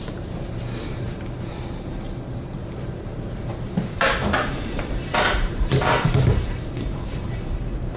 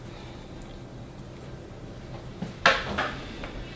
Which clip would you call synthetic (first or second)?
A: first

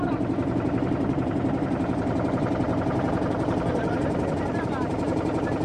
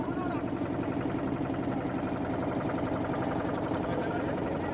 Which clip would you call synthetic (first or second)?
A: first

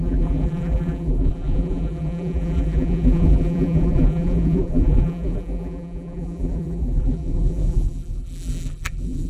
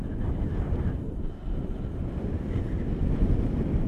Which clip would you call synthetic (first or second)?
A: first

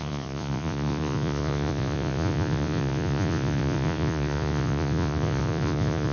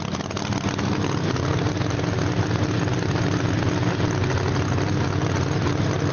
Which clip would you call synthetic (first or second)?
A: first